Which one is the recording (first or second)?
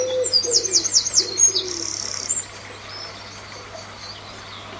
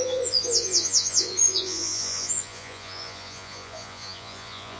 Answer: first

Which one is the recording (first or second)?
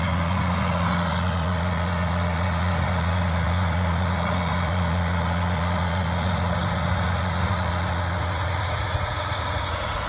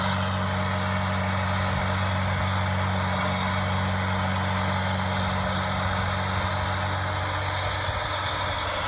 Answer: second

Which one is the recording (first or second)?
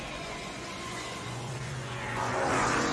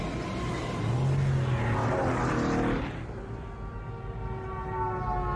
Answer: second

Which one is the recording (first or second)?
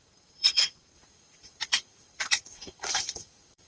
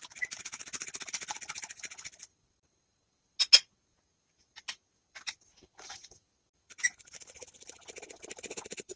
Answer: second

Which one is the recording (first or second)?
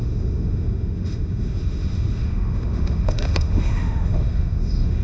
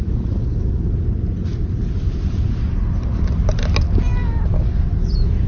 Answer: second